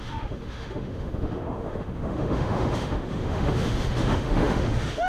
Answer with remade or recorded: remade